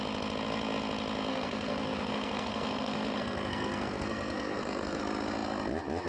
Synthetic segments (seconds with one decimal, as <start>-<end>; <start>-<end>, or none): 1.3-5.0